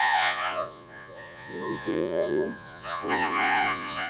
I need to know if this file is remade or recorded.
remade